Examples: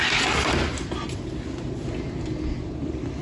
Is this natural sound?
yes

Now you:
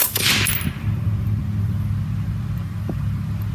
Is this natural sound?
no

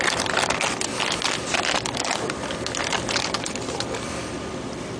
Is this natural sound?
no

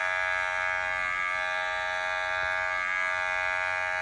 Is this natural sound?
yes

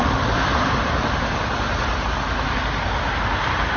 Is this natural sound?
yes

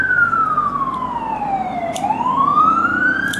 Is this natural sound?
no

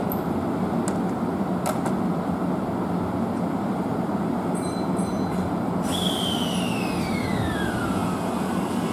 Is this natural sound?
yes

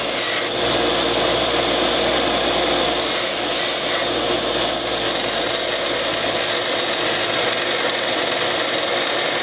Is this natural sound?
yes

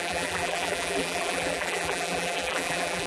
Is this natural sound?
no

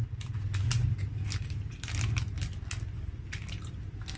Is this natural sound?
yes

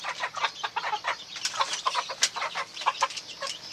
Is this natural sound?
no